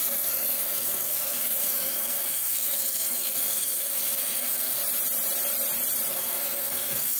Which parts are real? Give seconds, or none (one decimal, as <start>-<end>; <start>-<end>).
4.8-6.1